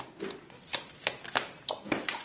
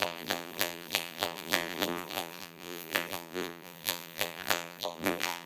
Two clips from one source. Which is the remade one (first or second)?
second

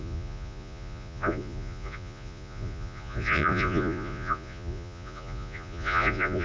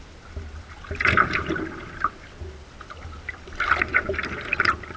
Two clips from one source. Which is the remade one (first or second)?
first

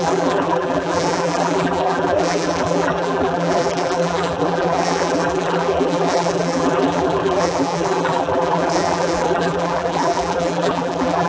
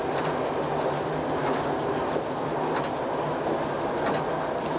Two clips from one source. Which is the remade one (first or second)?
first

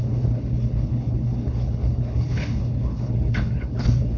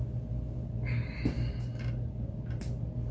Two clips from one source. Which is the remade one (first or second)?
first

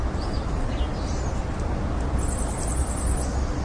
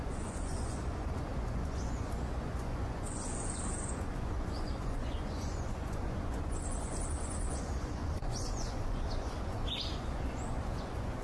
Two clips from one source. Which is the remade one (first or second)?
second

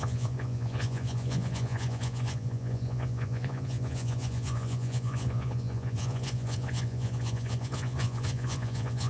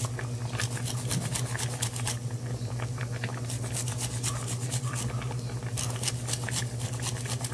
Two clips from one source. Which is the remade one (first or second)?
first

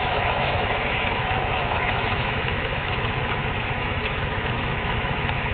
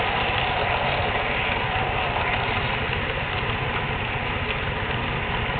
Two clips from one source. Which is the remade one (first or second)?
first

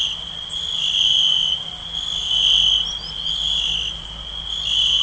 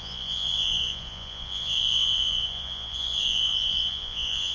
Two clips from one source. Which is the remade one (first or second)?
second